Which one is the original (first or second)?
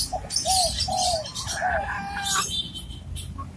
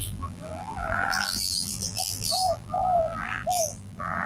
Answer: first